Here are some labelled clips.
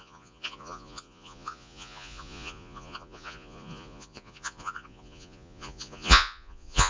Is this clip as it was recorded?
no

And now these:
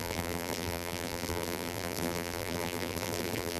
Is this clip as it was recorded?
no